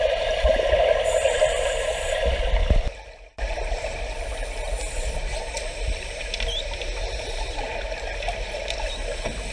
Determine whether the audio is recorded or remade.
recorded